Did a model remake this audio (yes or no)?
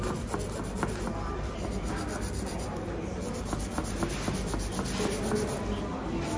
no